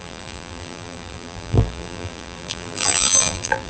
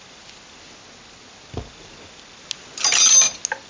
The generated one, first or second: first